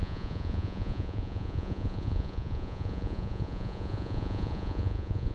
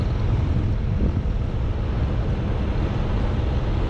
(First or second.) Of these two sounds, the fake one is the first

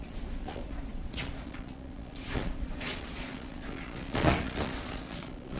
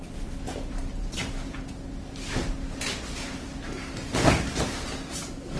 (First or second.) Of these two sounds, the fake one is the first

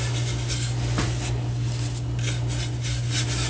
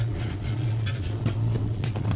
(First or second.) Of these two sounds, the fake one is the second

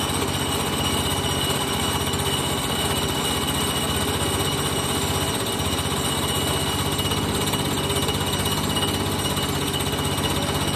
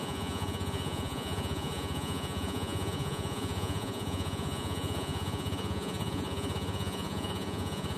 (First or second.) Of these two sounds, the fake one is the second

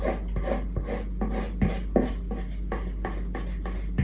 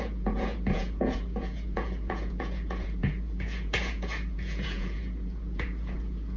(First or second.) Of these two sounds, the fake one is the second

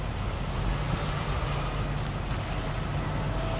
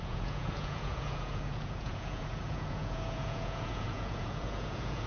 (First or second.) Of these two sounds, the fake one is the second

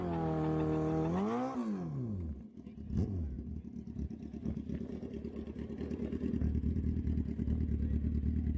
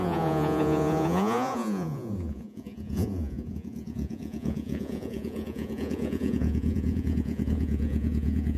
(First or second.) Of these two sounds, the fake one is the second